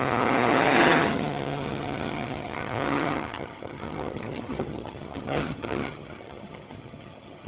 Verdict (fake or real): fake